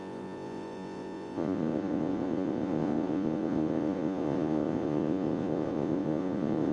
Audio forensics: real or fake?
fake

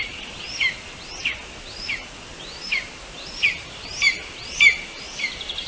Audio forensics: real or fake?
real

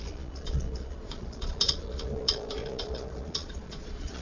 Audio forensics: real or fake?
fake